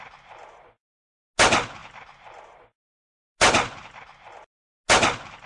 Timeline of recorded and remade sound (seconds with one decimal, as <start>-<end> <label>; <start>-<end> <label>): 0.0-5.5 recorded